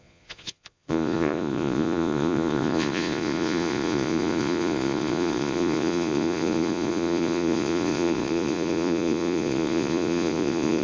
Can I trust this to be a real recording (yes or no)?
no